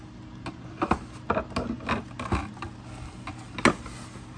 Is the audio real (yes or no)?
yes